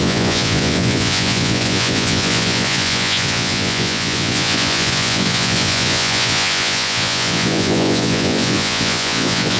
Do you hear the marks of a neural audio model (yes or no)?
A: yes